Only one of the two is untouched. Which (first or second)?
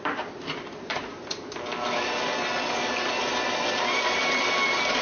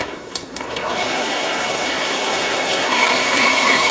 first